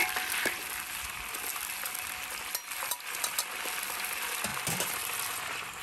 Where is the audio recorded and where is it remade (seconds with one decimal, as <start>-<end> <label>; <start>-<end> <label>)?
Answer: 0.0-4.5 recorded; 4.5-5.8 remade